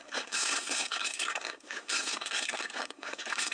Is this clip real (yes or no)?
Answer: no